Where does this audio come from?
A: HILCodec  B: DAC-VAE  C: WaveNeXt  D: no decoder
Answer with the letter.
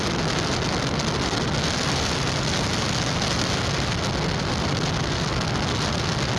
D